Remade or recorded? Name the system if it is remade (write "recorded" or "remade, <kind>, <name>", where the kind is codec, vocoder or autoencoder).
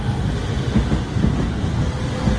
recorded